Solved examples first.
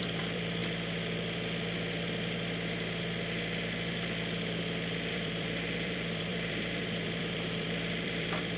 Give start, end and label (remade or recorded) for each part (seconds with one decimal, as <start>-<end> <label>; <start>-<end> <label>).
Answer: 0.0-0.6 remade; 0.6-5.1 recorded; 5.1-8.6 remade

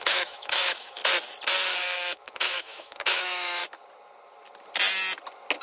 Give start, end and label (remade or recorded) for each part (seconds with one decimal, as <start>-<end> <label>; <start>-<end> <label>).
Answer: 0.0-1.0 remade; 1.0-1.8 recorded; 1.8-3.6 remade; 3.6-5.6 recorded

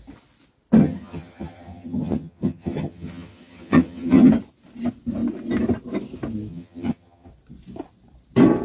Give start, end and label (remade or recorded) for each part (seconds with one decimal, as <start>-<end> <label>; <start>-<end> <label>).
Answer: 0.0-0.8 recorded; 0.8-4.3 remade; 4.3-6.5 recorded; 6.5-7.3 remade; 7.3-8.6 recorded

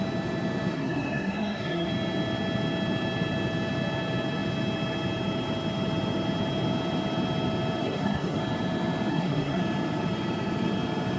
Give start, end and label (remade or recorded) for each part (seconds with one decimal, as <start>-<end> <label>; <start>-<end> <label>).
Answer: 0.0-0.7 recorded; 0.7-1.9 remade; 1.9-7.8 recorded; 7.8-8.4 remade; 8.4-9.1 recorded; 9.1-9.6 remade; 9.6-11.2 recorded

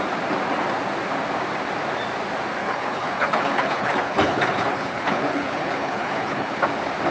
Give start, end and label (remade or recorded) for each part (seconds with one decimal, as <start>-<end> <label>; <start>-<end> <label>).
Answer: 0.0-2.6 recorded; 2.6-6.6 remade; 6.6-7.1 recorded